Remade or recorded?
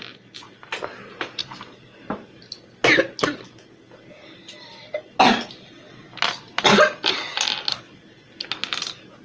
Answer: recorded